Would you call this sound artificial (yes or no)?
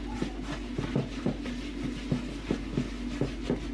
no